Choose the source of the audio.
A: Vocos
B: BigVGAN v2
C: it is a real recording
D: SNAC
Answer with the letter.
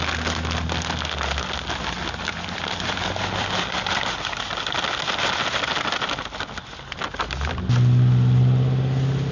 C